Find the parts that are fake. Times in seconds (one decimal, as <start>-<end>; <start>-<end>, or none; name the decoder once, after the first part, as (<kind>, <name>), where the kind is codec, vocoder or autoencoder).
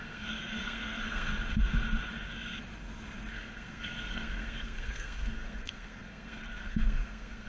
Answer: 0.0-1.3 (codec, SNAC); 3.3-7.5